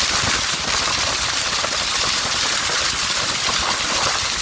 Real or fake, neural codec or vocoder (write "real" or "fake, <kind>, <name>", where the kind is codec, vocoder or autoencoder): real